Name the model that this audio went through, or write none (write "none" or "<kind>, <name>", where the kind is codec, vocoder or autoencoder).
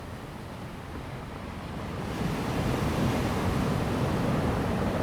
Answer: none